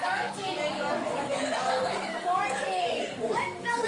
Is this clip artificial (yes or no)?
yes